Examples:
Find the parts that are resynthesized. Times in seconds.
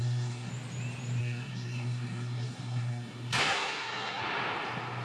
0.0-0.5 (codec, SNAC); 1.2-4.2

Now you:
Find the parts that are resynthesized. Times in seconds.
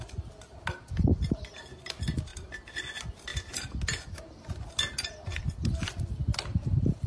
none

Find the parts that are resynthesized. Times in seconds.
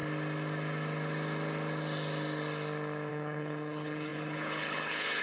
3.1-5.2 (codec, HILCodec)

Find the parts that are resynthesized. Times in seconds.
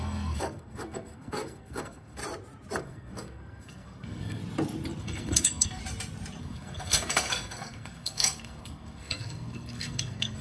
0.0-2.2 (codec, SNAC); 2.8-4.4; 5.0-5.8; 6.4-10.4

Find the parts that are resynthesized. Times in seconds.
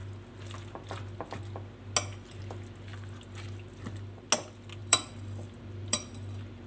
2.9-4.2 (vocoder, BigVGAN v2); 4.8-6.7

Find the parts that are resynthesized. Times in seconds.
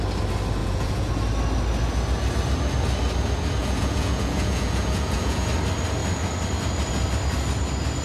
0.6-1.1 (vocoder, Vocos); 3.6-5.5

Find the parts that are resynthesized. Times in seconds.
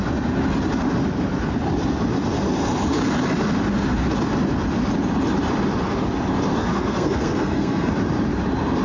6.5-7.9 (codec, SNAC)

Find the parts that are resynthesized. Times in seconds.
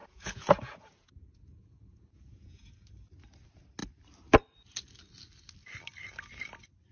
0.0-2.7 (vocoder, Vocos)